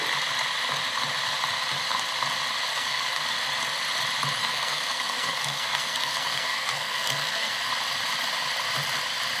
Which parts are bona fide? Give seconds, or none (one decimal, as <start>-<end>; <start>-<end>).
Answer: 0.0-2.7; 3.2-4.4; 7.7-9.4